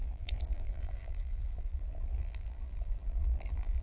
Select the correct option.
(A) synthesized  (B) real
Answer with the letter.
A